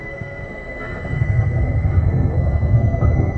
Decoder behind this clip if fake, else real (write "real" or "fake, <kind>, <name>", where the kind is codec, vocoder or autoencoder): fake, codec, SNAC